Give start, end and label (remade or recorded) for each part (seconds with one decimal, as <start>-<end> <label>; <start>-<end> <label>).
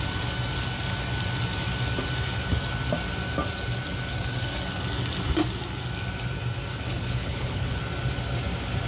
0.0-6.7 recorded; 6.7-7.8 remade; 7.8-8.9 recorded